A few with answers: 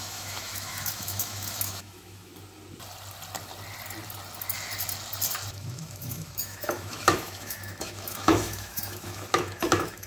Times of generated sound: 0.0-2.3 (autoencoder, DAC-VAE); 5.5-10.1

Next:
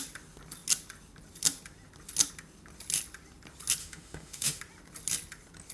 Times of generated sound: 3.8-4.6 (autoencoder, DAC-VAE)

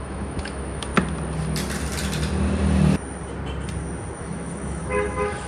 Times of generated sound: 0.0-0.9 (autoencoder, DAC-VAE); 4.2-5.5

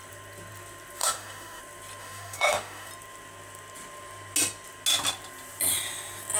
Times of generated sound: 1.0-1.6 (autoencoder, DAC-VAE); 2.0-2.9

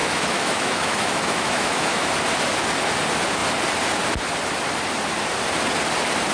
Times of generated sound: 0.0-2.1 (autoencoder, DAC-VAE)

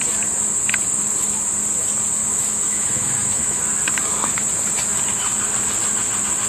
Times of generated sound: 2.2-3.6 (autoencoder, DAC-VAE)

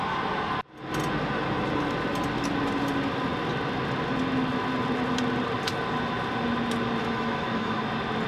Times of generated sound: 7.0-7.8 (autoencoder, DAC-VAE)

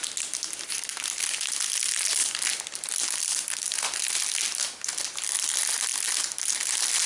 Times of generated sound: none